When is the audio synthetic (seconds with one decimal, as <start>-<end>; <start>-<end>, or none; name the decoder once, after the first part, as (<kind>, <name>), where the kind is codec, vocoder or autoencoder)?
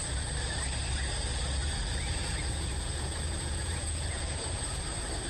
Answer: 1.6-4.8 (vocoder, Vocos)